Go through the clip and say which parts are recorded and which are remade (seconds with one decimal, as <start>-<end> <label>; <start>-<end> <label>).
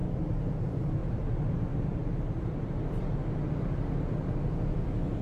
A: 0.0-0.6 remade; 0.6-1.0 recorded; 1.0-1.6 remade; 1.6-5.2 recorded